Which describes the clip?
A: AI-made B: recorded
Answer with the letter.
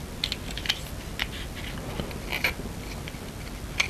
B